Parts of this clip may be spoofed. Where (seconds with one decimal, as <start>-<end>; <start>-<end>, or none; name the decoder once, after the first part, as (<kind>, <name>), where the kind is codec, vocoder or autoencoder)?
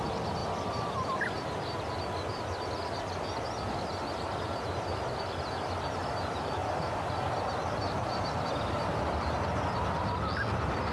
0.4-2.6 (vocoder, BigVGAN v2); 6.6-9.3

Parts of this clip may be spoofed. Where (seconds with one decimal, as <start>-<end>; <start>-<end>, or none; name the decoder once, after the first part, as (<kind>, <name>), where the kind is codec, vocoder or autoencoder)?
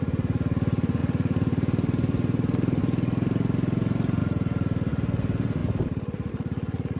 none